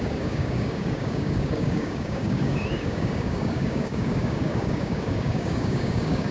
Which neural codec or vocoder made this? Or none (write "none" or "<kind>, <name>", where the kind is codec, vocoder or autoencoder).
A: codec, DAC